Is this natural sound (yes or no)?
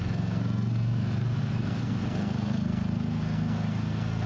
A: no